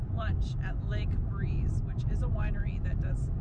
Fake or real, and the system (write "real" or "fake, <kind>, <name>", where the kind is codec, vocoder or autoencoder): real